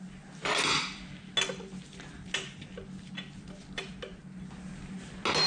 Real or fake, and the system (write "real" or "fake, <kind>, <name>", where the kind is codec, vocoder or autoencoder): real